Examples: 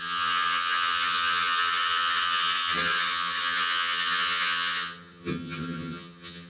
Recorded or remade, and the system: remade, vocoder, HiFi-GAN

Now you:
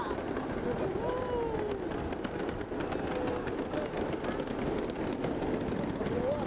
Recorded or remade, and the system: recorded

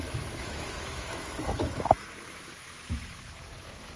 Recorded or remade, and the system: remade, autoencoder, DAC-VAE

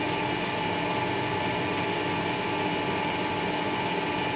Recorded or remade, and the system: recorded